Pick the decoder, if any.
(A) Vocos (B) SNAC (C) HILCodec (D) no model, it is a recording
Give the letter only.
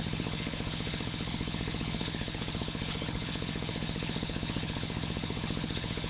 C